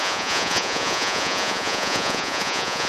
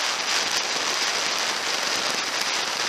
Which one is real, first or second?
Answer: second